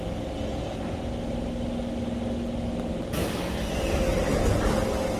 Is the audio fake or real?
real